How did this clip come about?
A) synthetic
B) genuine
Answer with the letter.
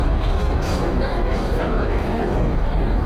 A